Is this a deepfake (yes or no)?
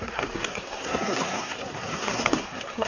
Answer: yes